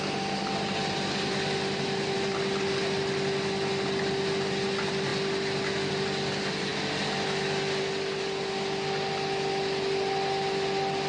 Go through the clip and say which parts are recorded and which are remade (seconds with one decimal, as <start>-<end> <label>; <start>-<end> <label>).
0.0-11.1 recorded

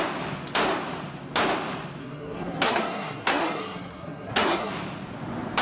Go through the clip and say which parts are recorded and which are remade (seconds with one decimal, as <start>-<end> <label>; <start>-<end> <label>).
0.0-2.0 recorded; 2.0-4.7 remade; 4.7-5.6 recorded

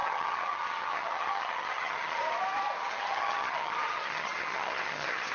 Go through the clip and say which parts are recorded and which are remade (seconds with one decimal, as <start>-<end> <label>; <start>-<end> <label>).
0.0-2.2 remade; 2.2-2.8 recorded; 2.8-5.3 remade